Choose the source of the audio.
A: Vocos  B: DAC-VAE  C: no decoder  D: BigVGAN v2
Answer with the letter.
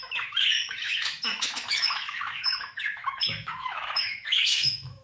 B